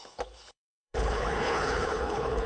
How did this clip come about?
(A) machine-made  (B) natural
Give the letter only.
A